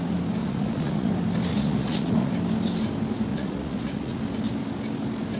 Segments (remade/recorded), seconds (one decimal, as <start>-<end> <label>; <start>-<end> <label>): 0.0-0.4 recorded; 0.4-1.1 remade; 1.1-1.5 recorded; 1.5-2.3 remade; 2.3-3.3 recorded; 3.3-4.2 remade; 4.2-5.4 recorded